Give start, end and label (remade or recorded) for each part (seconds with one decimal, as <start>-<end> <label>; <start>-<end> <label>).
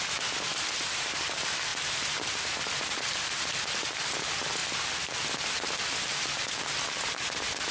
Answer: 0.0-7.7 recorded